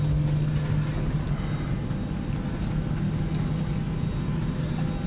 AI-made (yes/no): no